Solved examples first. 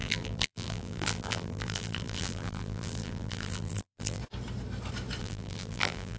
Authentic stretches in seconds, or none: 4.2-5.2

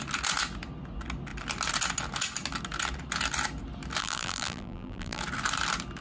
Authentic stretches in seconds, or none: 0.0-4.0; 5.2-6.0

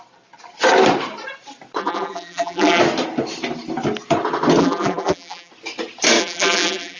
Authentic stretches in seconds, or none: 0.0-1.8; 2.8-4.6; 5.5-6.2

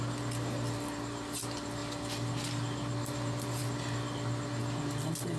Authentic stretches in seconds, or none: 0.0-5.4

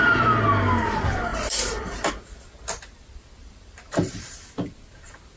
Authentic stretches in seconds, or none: 0.0-1.3; 2.1-3.4; 4.2-5.4